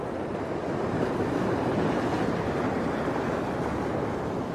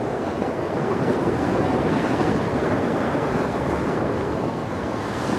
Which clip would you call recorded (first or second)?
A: first